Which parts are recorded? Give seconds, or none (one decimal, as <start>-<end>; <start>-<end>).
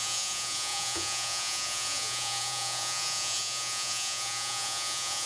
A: none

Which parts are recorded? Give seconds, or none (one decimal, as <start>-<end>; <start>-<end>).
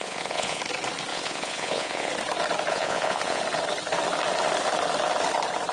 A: 0.6-1.1; 2.1-2.7; 3.4-5.7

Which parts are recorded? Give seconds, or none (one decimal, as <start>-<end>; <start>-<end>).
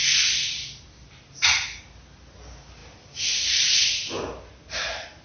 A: 0.0-5.2